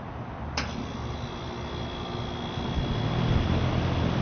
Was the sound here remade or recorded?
recorded